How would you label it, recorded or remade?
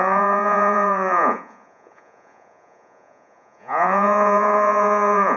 remade